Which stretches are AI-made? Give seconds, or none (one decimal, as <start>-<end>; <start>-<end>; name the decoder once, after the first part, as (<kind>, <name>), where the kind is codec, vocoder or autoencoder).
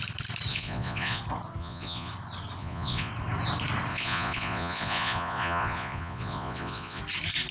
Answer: 0.5-1.2 (vocoder, Vocos); 1.6-2.1; 2.6-3.1; 3.9-7.0